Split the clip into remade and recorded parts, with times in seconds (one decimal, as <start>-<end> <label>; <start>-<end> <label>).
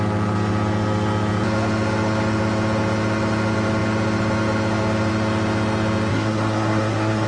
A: 0.0-6.1 recorded; 6.1-7.3 remade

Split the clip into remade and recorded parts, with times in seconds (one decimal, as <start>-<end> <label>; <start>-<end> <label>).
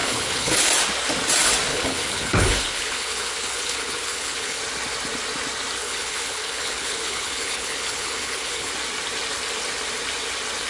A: 0.0-0.7 remade; 0.7-1.7 recorded; 1.7-4.6 remade; 4.6-5.8 recorded; 5.8-8.7 remade; 8.7-10.7 recorded